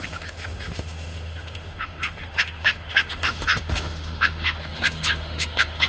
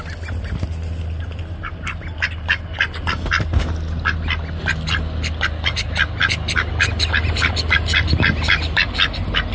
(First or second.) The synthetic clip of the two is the first